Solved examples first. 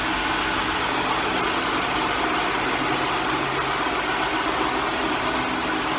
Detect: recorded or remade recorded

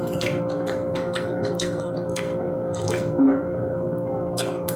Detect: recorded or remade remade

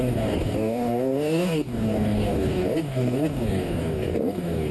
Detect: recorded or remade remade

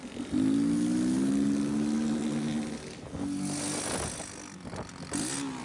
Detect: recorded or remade recorded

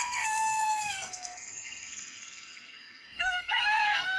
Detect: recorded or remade remade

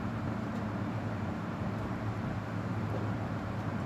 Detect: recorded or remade remade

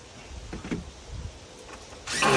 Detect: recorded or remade recorded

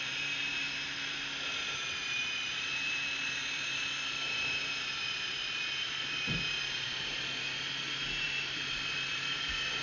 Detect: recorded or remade remade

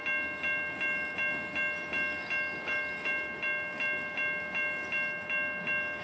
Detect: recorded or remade recorded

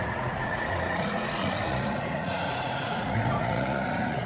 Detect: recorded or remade remade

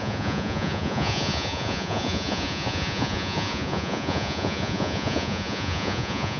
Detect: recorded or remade remade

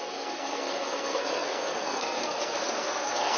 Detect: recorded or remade remade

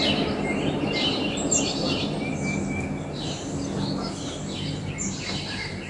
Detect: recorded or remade recorded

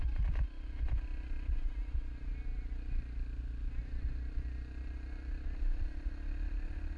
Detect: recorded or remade recorded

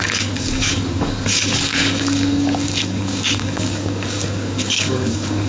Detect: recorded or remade remade